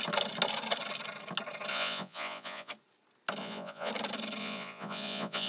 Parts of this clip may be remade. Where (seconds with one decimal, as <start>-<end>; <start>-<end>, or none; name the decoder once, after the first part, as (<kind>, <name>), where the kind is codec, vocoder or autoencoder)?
1.7-2.7 (vocoder, Vocos); 3.4-3.9; 4.4-5.5